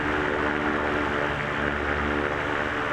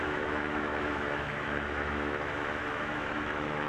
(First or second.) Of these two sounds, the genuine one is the first